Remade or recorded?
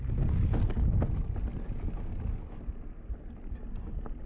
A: recorded